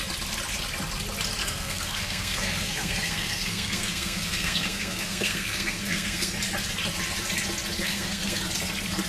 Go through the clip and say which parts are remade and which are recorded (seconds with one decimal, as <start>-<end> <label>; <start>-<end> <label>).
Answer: 0.0-1.4 recorded; 1.4-6.3 remade; 6.3-7.8 recorded; 7.8-8.4 remade; 8.4-9.1 recorded